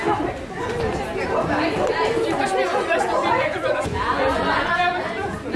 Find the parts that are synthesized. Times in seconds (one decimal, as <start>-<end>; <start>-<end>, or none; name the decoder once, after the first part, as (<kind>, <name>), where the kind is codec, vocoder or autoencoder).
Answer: 2.7-4.7 (vocoder, Vocos)